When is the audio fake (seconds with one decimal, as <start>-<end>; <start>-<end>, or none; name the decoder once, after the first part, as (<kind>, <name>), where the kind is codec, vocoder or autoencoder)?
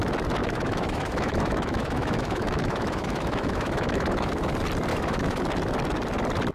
0.4-4.3 (autoencoder, DAC-VAE); 4.9-5.4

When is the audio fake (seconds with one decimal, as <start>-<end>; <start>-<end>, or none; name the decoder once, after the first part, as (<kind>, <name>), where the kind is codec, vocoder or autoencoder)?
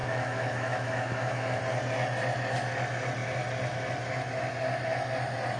0.0-1.6 (autoencoder, DAC-VAE)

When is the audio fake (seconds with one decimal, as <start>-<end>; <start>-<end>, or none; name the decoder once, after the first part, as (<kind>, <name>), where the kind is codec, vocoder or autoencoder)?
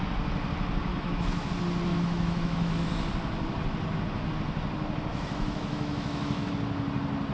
0.9-1.5 (autoencoder, DAC-VAE); 1.9-2.9; 5.1-6.5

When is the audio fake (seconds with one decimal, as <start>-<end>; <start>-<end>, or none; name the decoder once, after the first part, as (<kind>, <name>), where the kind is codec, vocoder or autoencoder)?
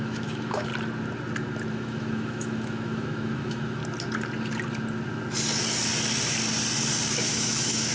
0.0-0.7 (autoencoder, DAC-VAE); 1.7-3.8; 7.2-7.9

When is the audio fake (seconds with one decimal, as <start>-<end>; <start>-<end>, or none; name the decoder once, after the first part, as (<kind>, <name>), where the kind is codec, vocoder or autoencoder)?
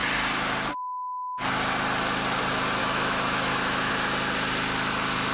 2.8-3.9 (autoencoder, DAC-VAE)